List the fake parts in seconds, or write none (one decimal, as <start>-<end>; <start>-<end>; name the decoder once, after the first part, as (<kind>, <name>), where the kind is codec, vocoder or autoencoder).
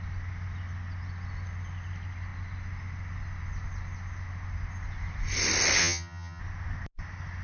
5.8-6.4 (vocoder, HiFi-GAN)